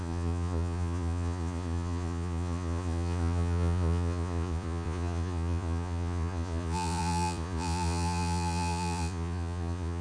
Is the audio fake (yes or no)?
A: yes